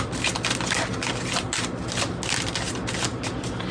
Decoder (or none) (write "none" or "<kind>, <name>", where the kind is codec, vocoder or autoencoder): none